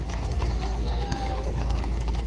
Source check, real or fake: fake